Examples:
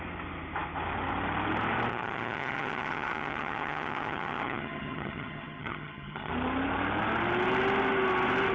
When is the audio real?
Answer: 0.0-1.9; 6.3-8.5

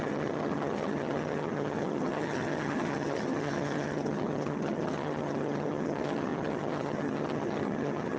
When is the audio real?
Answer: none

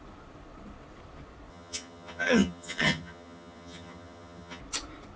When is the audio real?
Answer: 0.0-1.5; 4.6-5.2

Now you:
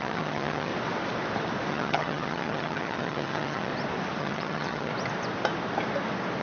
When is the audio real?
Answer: 0.7-1.7; 3.7-4.2; 4.9-6.4